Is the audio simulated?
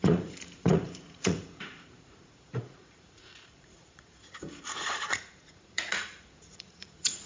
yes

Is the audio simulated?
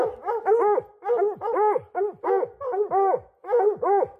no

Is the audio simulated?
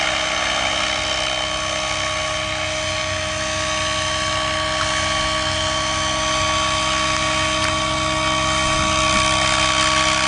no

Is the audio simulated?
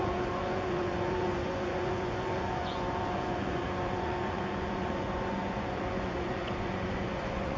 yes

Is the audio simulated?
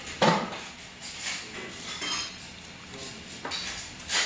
no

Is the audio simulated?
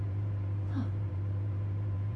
yes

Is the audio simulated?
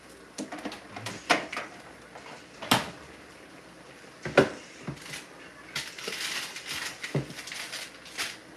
no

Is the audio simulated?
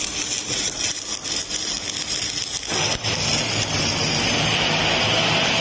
no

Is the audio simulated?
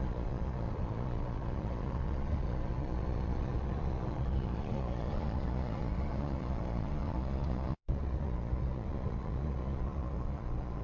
yes